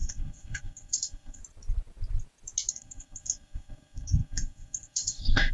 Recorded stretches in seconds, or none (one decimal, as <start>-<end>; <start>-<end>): 1.4-2.7